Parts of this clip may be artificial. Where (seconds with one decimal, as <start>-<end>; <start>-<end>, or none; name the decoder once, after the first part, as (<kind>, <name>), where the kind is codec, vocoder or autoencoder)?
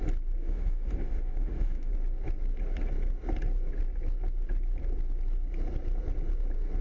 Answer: 0.4-1.9 (autoencoder, DAC-VAE)